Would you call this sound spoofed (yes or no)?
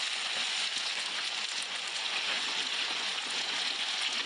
yes